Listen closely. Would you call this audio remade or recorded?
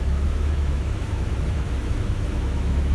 remade